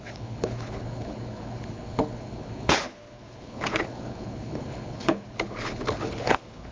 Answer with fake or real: fake